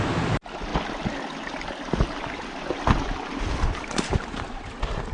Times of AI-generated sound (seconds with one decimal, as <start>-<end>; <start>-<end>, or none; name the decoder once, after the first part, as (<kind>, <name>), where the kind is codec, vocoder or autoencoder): 0.0-0.7 (vocoder, BigVGAN v2); 3.8-5.1